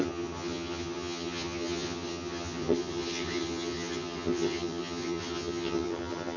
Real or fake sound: fake